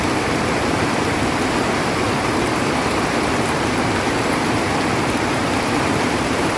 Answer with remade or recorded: remade